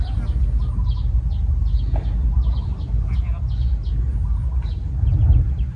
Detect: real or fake real